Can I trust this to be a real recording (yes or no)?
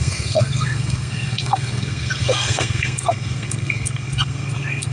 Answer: no